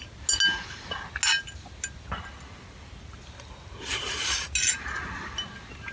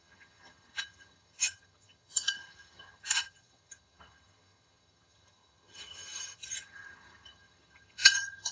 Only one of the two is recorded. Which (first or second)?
first